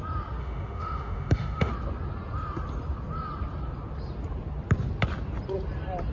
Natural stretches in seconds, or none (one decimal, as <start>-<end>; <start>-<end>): 0.0-0.4; 1.7-6.1